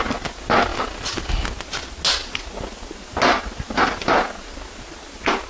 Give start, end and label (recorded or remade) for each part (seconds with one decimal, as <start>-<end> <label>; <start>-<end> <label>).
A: 0.0-5.5 recorded